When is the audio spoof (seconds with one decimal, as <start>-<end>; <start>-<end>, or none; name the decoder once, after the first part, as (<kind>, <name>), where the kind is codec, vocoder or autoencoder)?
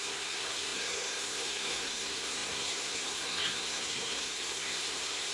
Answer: 0.0-5.3 (codec, SNAC)